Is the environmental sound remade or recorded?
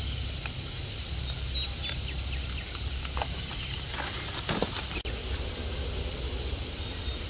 recorded